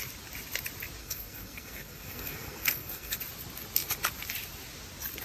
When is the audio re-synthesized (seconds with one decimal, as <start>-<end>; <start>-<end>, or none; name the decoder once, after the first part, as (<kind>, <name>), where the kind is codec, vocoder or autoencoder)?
1.0-3.2 (codec, SNAC)